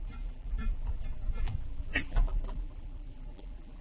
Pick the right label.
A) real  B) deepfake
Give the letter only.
B